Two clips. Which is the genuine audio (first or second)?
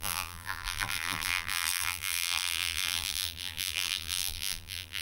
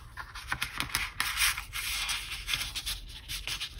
second